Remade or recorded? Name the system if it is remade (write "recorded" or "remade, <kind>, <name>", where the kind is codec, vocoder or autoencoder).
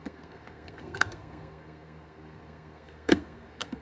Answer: remade, codec, SNAC